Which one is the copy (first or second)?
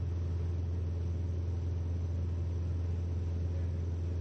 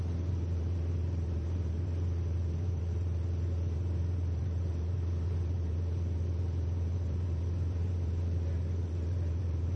second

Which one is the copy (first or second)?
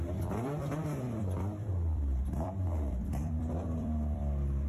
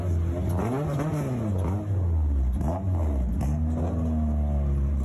first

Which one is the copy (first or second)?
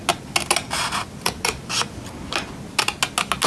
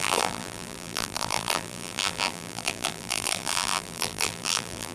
second